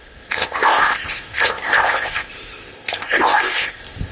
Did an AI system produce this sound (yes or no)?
yes